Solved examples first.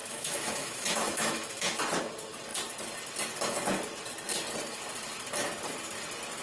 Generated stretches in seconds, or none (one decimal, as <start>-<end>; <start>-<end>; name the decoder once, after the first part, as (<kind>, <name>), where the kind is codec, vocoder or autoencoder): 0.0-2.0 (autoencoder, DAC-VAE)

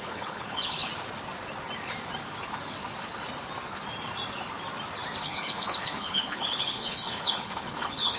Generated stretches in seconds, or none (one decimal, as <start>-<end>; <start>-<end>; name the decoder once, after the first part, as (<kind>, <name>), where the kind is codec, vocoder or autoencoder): 0.0-0.9 (codec, HILCodec); 5.2-8.2

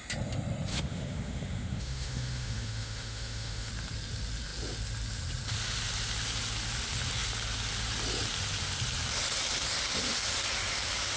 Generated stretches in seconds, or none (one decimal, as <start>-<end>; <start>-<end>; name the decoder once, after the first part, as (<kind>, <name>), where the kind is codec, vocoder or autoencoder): 0.7-3.7 (autoencoder, DAC-VAE)